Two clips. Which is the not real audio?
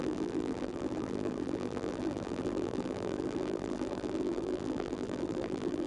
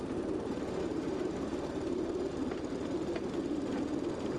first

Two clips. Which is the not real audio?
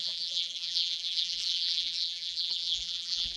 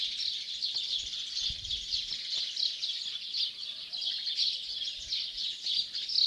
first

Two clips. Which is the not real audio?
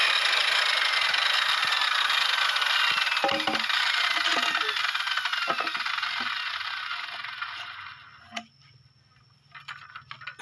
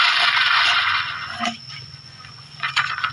second